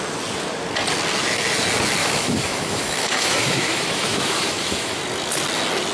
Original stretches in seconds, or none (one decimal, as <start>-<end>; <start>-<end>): 0.0-2.0; 5.0-5.9